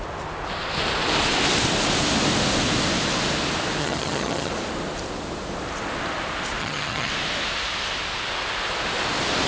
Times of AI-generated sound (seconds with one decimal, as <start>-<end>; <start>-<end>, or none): 3.8-4.5; 6.6-7.1